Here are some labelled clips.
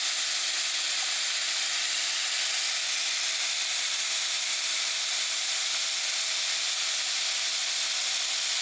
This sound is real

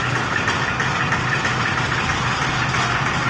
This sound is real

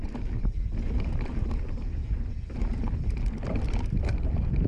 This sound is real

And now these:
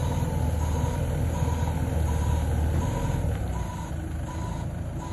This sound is real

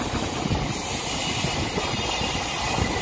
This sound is real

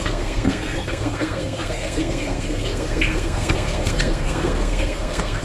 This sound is fake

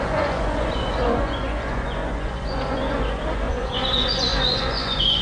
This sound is fake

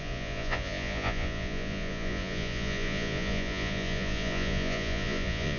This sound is fake